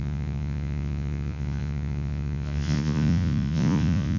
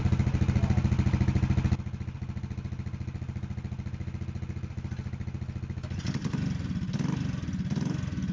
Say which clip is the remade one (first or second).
first